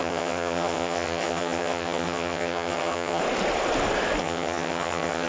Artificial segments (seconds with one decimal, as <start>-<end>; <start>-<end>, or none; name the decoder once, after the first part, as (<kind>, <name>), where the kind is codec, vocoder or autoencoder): 0.0-3.2 (vocoder, HiFi-GAN); 4.2-5.3

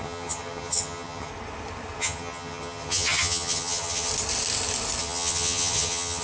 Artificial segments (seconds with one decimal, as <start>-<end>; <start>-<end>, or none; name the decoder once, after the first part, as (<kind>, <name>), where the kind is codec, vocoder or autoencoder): 0.0-1.3 (vocoder, HiFi-GAN); 2.0-4.1; 5.0-6.2